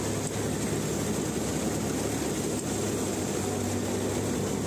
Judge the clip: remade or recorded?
recorded